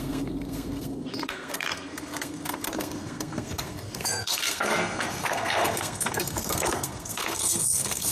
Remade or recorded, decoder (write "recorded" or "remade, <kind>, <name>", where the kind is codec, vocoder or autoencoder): remade, codec, SNAC